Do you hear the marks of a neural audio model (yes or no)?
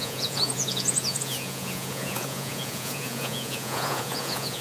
yes